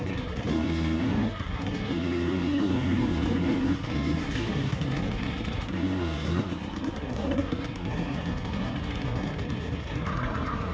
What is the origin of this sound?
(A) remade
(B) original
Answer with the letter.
A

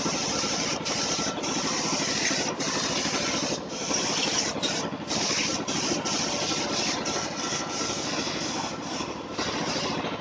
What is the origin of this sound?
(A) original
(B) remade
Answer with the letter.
A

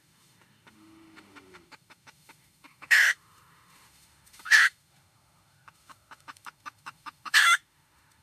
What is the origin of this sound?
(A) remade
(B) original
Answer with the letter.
A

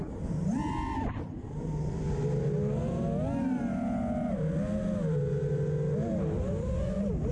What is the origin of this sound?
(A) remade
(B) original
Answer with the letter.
B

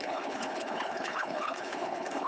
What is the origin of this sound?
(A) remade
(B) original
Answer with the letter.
A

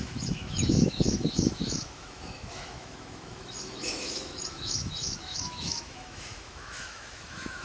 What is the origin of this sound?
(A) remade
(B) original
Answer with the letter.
A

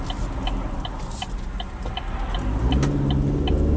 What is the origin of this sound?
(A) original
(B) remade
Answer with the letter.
A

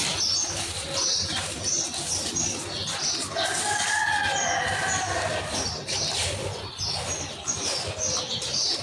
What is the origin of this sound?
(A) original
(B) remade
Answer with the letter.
A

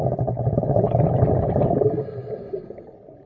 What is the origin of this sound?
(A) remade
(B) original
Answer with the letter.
B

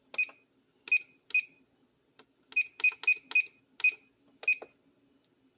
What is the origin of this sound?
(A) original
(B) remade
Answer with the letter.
A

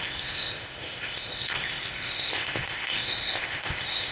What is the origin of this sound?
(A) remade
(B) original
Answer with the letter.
A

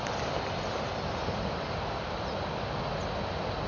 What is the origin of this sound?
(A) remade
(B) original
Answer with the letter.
B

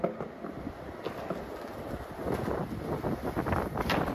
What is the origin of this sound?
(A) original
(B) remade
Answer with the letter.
A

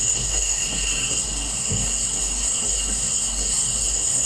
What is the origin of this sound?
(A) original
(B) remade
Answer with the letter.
B